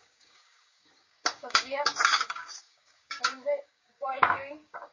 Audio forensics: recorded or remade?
remade